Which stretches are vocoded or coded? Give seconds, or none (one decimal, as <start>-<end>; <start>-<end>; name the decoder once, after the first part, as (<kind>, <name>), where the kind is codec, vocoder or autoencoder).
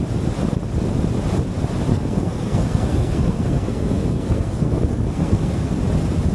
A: 1.9-5.7 (codec, SNAC)